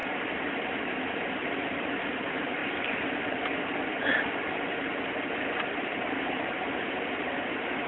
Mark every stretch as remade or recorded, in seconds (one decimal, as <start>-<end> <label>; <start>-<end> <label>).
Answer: 0.0-0.8 recorded; 0.8-2.6 remade; 2.6-5.7 recorded; 5.7-7.9 remade